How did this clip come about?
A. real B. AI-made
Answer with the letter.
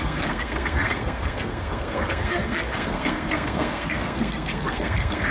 B